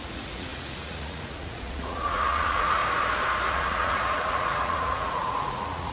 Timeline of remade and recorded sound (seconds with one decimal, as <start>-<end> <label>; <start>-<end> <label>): 0.0-2.8 remade; 2.8-3.5 recorded; 3.5-5.9 remade